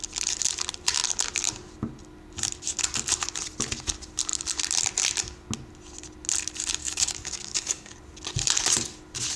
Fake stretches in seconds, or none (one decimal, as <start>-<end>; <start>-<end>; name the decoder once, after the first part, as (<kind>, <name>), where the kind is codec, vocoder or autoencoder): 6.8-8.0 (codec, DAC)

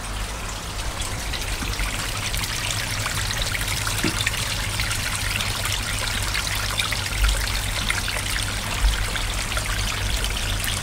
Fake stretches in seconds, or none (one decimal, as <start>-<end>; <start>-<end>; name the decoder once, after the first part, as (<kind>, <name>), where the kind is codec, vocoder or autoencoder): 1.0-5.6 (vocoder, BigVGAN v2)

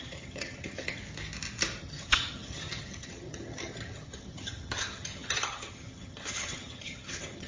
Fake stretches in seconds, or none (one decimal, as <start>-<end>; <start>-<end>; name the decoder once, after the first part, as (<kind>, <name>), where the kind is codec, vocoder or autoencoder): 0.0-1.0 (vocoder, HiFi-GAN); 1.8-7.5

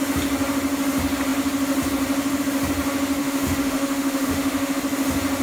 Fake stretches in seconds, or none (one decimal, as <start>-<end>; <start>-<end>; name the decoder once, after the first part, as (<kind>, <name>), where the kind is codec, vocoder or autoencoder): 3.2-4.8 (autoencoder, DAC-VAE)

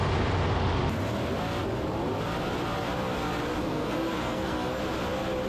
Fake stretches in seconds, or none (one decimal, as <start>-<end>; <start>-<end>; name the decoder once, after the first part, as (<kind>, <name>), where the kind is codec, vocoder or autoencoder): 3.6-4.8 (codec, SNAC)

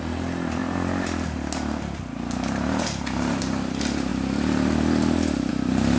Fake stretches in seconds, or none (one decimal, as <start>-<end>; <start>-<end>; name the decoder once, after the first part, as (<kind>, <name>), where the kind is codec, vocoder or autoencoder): none

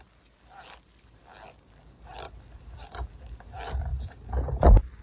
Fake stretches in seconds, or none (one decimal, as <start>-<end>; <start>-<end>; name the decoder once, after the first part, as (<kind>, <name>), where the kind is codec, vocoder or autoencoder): 0.0-3.9 (vocoder, BigVGAN v2)

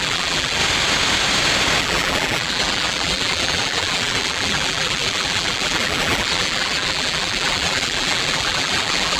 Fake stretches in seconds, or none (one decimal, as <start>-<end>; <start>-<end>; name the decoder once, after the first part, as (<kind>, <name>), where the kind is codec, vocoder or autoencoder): 0.0-0.6 (vocoder, BigVGAN v2); 1.8-9.2